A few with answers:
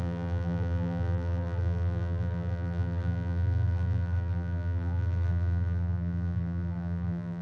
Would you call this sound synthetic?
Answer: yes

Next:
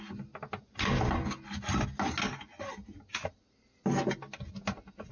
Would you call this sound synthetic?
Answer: no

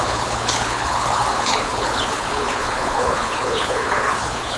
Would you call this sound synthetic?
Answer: yes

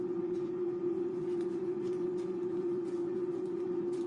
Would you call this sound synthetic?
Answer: yes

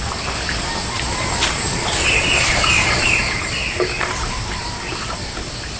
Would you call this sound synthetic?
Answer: no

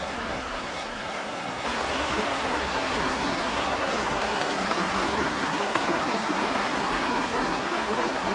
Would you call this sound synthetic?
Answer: yes